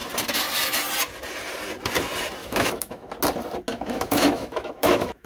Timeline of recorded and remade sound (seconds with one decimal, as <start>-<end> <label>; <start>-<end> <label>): 0.0-2.4 recorded; 2.4-3.1 remade; 3.1-3.7 recorded; 3.7-5.3 remade

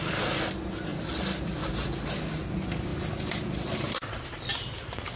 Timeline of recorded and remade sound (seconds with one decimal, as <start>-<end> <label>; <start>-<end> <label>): 0.0-0.9 recorded; 0.9-1.7 remade; 1.7-2.9 recorded; 2.9-4.3 remade; 4.3-5.2 recorded

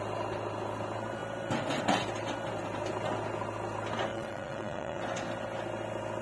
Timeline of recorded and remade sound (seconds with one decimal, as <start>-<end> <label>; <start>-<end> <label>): 0.0-4.1 recorded; 4.1-5.0 remade; 5.0-6.2 recorded

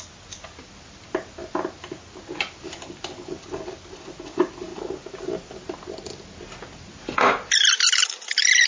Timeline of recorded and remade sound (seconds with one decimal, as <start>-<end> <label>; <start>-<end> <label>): 0.0-8.7 recorded

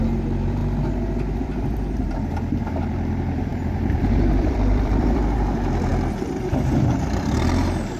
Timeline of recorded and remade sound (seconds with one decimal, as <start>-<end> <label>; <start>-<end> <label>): 0.0-0.6 remade; 0.6-1.4 recorded; 1.4-8.0 remade

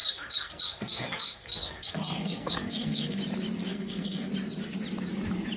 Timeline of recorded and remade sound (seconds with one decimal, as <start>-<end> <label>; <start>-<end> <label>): 0.0-3.2 remade; 3.2-3.7 recorded; 3.7-4.3 remade; 4.3-5.6 recorded